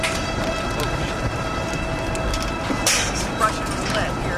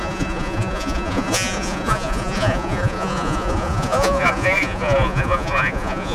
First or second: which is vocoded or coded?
second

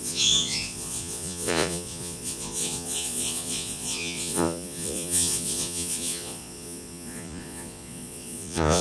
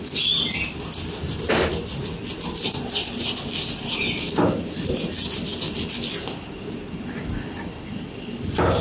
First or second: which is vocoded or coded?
first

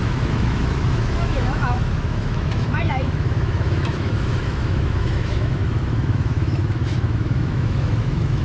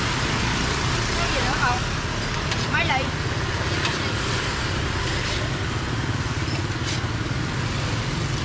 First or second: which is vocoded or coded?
first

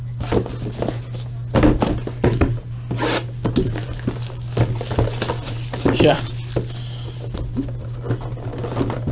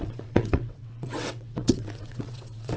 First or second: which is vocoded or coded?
second